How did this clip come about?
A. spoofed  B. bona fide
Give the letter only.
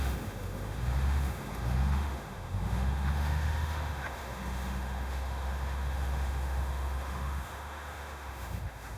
A